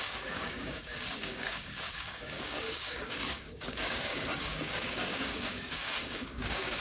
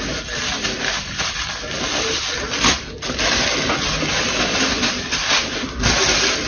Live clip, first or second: second